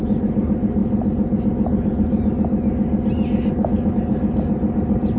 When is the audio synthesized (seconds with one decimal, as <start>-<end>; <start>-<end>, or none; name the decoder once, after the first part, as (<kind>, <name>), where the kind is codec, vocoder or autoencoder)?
none